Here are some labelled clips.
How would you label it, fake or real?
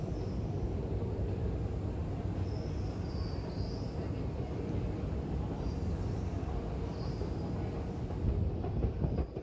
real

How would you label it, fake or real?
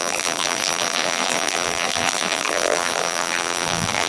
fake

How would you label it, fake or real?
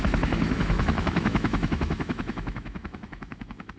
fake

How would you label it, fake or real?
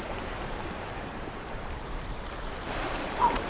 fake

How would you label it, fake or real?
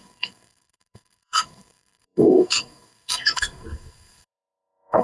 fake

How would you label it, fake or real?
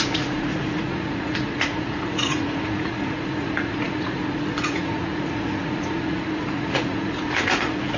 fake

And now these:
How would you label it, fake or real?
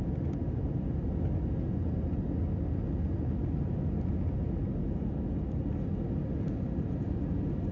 real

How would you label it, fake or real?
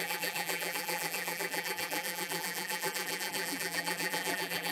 fake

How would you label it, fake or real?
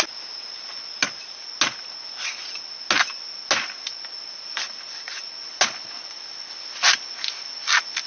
real